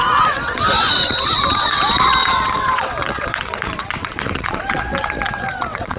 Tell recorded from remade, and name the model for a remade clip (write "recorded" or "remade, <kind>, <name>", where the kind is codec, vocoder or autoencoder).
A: remade, vocoder, WaveNeXt